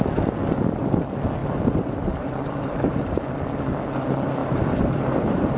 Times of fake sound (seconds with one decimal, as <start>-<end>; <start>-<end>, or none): 1.4-3.2; 4.4-5.6